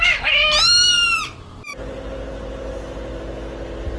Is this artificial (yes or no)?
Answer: no